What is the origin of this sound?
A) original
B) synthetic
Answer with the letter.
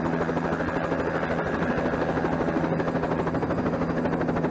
A